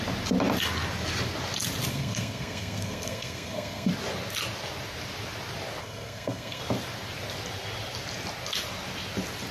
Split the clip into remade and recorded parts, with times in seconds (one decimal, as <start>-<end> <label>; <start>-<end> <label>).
0.0-1.9 recorded; 1.9-3.9 remade; 3.9-5.8 recorded; 5.8-6.6 remade; 6.6-9.5 recorded